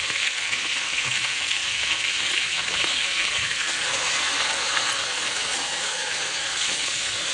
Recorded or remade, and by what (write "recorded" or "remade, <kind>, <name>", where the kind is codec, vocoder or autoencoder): remade, codec, SNAC